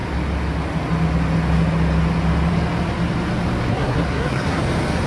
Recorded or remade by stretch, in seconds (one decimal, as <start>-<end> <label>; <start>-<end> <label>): 0.0-3.7 recorded; 3.7-4.6 remade; 4.6-5.1 recorded